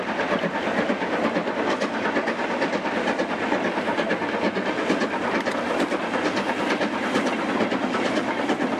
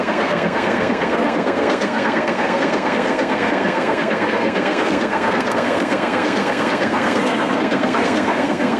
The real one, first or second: first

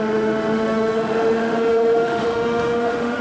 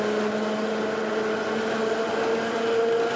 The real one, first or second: second